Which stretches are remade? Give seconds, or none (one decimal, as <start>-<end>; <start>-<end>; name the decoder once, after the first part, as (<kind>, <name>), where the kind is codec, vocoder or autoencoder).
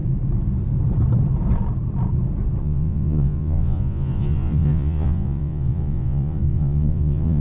2.6-7.4 (vocoder, Vocos)